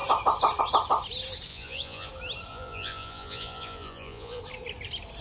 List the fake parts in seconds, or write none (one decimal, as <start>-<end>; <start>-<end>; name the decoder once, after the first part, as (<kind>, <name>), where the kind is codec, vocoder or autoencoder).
1.5-2.1 (vocoder, Vocos); 2.5-4.4